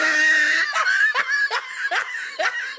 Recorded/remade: recorded